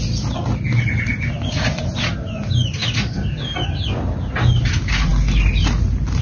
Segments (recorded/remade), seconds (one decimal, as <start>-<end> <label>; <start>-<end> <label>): 0.0-6.2 recorded